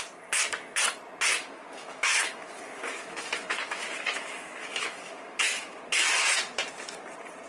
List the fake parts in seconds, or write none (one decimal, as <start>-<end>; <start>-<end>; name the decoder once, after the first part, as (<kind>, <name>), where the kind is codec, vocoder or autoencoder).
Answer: 1.3-5.8 (autoencoder, DAC-VAE)